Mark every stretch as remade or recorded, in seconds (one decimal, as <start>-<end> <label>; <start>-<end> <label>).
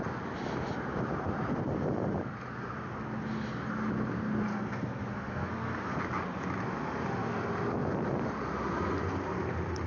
0.0-4.5 recorded; 4.5-6.0 remade; 6.0-9.9 recorded